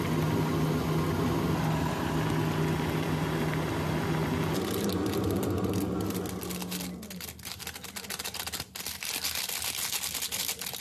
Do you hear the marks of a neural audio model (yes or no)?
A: no